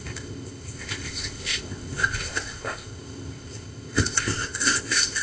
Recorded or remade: remade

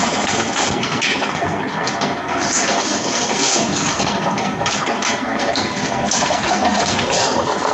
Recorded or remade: remade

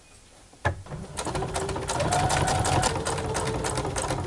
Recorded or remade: recorded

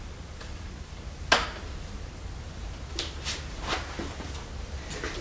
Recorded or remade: recorded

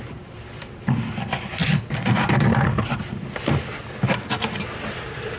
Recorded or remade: recorded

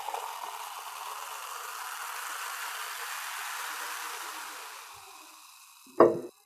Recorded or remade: recorded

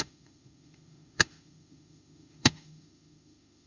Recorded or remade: remade